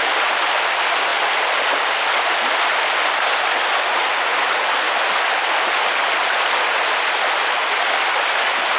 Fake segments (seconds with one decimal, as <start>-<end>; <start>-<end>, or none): none